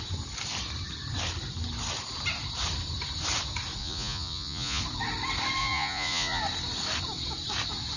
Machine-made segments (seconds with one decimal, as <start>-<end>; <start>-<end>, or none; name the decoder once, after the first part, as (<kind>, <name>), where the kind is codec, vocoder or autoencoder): 3.8-4.8 (vocoder, Vocos); 5.6-6.4